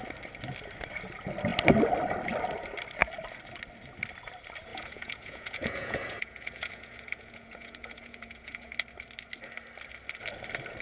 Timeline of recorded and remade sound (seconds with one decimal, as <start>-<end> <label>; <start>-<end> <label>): 0.0-4.7 recorded; 4.7-8.7 remade; 8.7-10.8 recorded